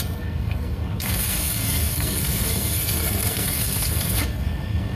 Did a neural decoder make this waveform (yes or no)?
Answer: yes